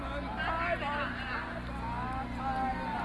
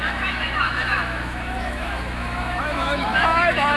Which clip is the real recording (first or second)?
first